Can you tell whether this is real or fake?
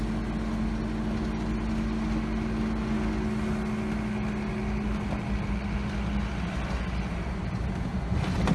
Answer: real